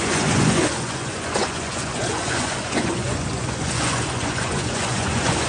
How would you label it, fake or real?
fake